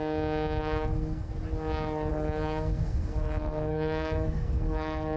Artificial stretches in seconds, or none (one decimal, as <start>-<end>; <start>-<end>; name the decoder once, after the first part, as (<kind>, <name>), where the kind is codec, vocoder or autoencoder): 0.6-1.3 (codec, SNAC); 2.1-5.2